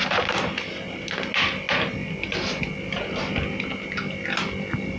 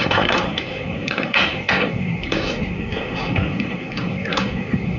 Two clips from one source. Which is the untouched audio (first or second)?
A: first